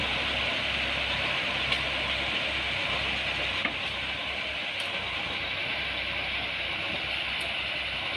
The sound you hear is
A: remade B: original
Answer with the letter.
B